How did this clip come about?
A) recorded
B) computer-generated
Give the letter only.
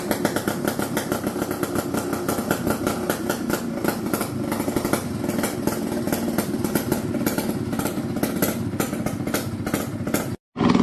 A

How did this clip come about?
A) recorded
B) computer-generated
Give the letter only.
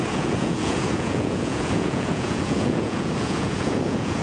B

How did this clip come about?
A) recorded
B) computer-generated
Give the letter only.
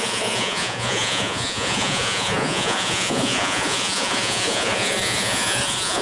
B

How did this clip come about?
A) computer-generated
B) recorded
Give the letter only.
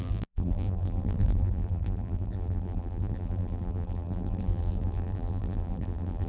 A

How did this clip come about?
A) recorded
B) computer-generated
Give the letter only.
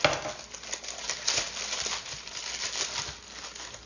A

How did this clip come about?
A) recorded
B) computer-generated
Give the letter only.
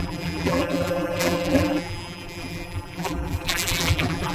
B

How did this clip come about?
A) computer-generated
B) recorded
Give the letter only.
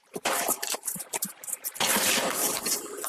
A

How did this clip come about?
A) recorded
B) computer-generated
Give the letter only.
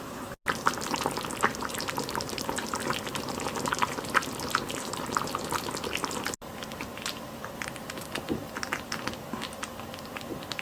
A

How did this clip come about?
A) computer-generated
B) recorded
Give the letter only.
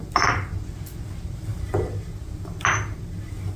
B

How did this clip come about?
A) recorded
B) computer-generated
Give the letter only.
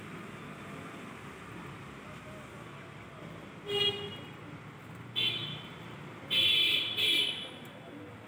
A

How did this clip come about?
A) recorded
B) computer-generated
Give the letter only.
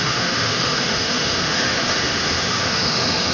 B